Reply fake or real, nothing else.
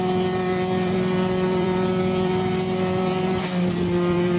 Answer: fake